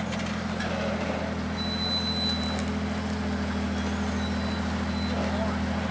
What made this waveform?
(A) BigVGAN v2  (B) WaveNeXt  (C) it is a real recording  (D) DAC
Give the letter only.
C